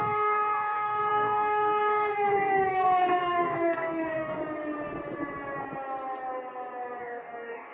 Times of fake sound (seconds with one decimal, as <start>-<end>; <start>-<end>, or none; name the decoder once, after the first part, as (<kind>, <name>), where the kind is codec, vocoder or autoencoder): 0.0-4.4 (codec, DAC); 7.0-7.7